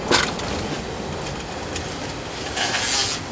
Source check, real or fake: real